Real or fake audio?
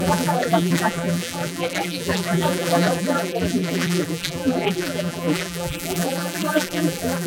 fake